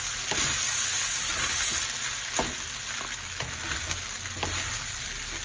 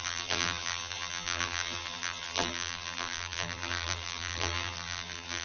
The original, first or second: first